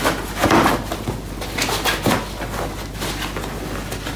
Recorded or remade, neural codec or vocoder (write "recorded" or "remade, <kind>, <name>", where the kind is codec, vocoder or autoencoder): recorded